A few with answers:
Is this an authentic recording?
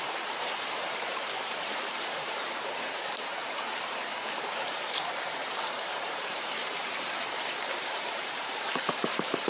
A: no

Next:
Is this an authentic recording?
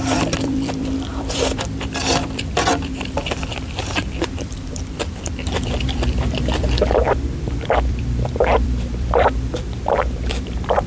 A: no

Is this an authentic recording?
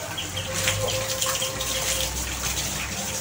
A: no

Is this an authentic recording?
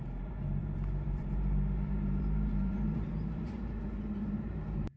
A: no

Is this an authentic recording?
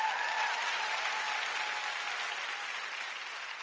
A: yes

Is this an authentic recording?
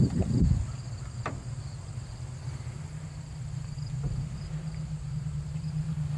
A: no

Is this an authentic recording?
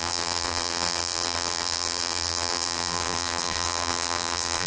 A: no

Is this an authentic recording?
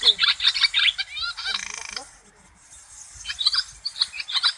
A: no